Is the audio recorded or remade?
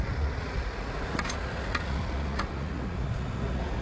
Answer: remade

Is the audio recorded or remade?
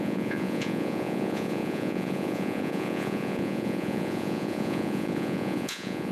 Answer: remade